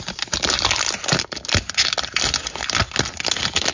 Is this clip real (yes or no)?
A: yes